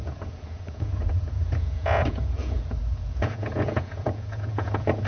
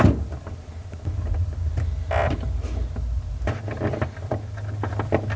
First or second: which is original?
second